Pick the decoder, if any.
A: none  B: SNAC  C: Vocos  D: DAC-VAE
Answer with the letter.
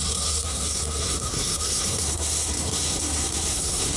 B